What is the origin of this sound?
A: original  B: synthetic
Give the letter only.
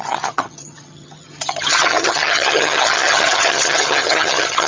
B